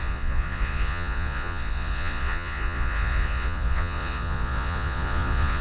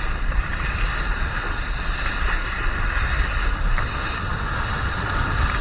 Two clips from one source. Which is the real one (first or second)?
second